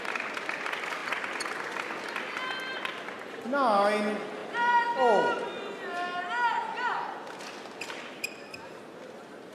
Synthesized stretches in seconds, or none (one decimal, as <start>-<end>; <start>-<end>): none